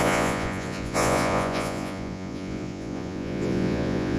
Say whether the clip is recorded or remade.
remade